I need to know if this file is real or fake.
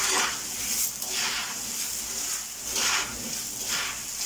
real